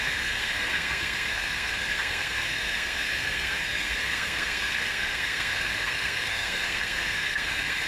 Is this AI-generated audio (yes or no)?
yes